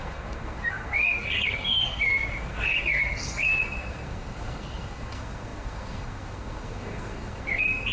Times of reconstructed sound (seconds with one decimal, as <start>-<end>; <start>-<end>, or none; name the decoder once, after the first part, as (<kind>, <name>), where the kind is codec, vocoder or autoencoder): 0.0-7.9 (codec, SNAC)